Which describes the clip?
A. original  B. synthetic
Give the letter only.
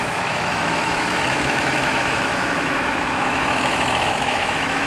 B